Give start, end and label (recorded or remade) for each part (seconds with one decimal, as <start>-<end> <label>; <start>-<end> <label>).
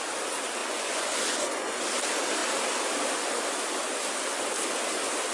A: 0.0-0.6 recorded; 0.6-1.8 remade; 1.8-5.3 recorded